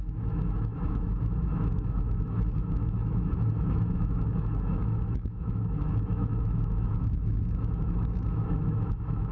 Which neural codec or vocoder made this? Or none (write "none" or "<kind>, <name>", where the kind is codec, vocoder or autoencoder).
autoencoder, DAC-VAE